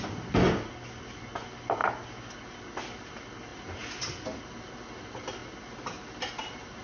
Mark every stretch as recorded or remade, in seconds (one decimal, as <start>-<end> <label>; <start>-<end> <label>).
0.0-6.8 recorded